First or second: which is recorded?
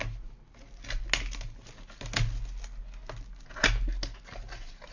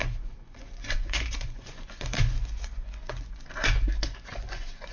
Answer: first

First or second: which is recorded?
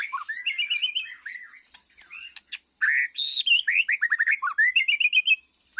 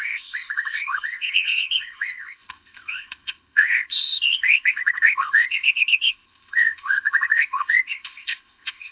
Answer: first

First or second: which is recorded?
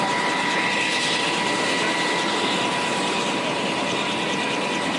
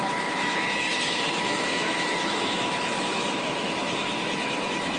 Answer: first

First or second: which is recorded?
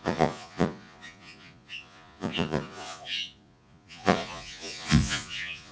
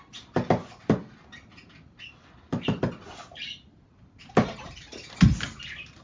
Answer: second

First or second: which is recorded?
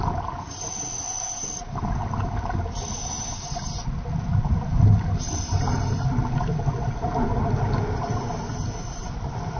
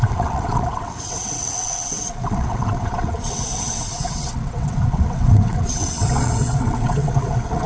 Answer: first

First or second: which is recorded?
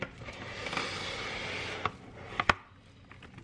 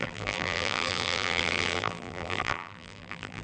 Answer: first